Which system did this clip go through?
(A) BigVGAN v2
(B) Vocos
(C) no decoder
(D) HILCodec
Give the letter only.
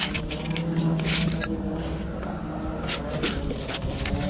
C